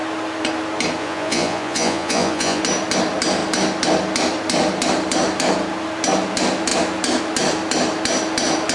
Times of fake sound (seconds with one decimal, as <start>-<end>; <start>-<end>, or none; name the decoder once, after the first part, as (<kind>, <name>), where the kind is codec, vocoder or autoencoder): 1.0-2.6 (vocoder, Vocos)